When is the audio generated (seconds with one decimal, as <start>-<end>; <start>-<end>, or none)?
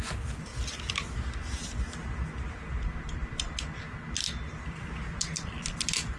none